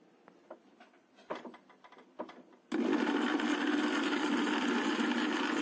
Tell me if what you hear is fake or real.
real